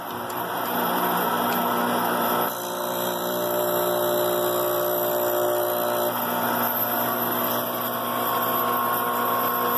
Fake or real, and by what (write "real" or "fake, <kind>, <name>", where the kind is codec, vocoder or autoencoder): fake, vocoder, BigVGAN v2